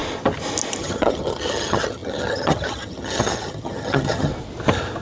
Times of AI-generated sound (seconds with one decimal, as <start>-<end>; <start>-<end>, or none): 0.8-4.3